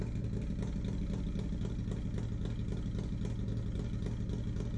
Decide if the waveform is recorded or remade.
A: recorded